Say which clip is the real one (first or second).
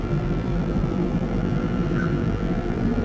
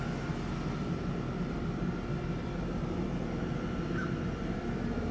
second